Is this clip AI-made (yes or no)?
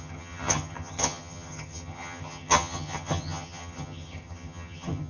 yes